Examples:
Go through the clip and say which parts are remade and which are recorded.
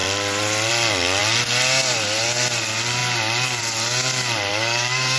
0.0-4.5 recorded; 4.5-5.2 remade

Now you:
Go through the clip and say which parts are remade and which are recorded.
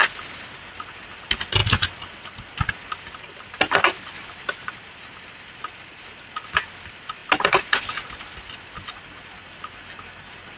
0.0-10.6 recorded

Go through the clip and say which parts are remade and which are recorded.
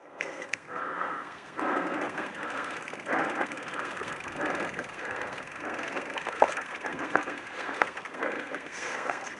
0.0-9.4 remade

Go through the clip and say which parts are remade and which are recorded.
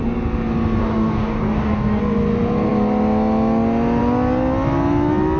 0.0-0.8 recorded; 0.8-2.0 remade; 2.0-5.4 recorded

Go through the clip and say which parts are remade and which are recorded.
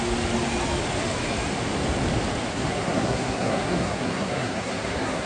0.0-2.5 recorded; 2.5-5.3 remade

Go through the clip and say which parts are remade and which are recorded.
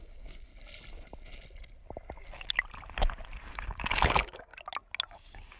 0.0-0.5 remade; 0.5-3.5 recorded; 3.5-4.5 remade; 4.5-5.1 recorded; 5.1-5.6 remade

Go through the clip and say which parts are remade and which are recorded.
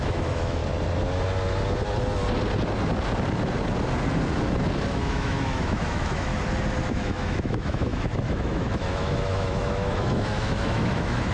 0.0-0.6 remade; 0.6-4.9 recorded; 4.9-6.3 remade; 6.3-6.9 recorded; 6.9-11.3 remade